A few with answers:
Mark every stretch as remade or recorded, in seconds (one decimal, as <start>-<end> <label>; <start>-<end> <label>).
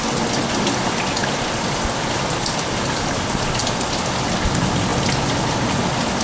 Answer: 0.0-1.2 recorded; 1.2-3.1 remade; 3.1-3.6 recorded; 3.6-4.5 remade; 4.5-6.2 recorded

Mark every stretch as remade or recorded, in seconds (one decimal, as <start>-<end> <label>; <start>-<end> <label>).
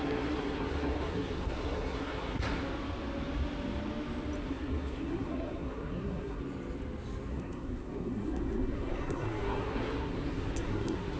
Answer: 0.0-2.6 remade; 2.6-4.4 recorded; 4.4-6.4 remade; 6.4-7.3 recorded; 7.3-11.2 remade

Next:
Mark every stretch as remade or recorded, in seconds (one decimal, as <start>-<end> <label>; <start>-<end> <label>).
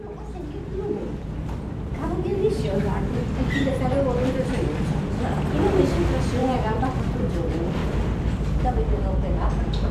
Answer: 0.0-6.4 recorded; 6.4-7.2 remade; 7.2-7.8 recorded; 7.8-8.7 remade; 8.7-9.9 recorded